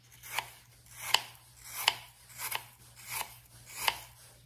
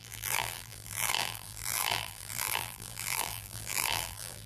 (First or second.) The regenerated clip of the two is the second